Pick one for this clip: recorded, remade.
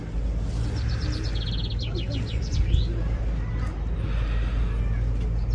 recorded